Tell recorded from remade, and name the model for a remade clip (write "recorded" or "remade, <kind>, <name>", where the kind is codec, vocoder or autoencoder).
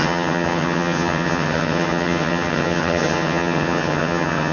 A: remade, vocoder, HiFi-GAN